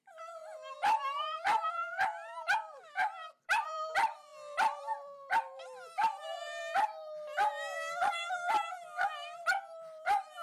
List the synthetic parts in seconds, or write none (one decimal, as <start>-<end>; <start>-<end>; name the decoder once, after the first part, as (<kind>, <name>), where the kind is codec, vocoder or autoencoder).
0.0-0.4 (vocoder, BigVGAN v2); 1.2-6.6; 8.1-10.4